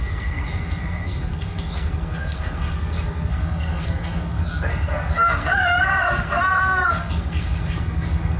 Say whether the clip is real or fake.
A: fake